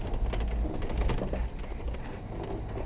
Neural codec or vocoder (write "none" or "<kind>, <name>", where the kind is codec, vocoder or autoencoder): none